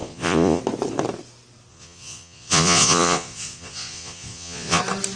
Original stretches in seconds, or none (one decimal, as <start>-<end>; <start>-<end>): 0.6-1.7; 4.8-5.2